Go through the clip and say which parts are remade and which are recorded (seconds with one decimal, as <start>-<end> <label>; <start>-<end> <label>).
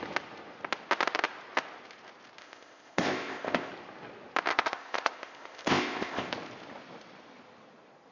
0.0-2.4 recorded; 2.4-3.7 remade; 3.7-4.5 recorded; 4.5-6.3 remade; 6.3-8.1 recorded